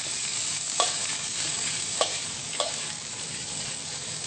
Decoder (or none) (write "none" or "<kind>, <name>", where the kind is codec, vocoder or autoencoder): codec, DAC